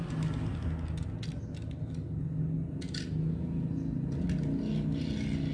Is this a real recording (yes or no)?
yes